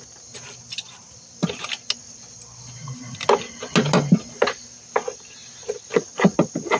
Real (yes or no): yes